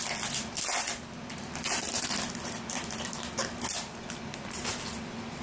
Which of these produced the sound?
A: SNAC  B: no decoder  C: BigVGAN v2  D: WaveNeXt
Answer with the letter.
B